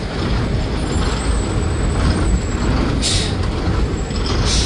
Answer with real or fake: real